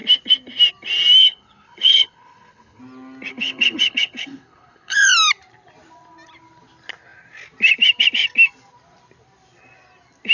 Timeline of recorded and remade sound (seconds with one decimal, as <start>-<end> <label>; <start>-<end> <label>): 0.0-1.2 recorded; 1.2-2.8 remade; 2.8-3.3 recorded; 3.3-5.1 remade; 5.1-10.3 recorded